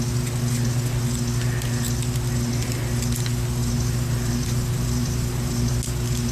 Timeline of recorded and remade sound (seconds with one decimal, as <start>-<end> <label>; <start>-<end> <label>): 0.0-3.6 recorded; 3.6-5.7 remade; 5.7-6.3 recorded